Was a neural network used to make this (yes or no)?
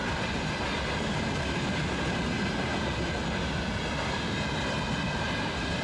no